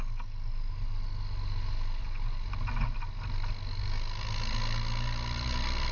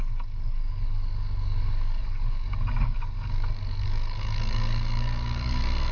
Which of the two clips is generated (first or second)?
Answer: second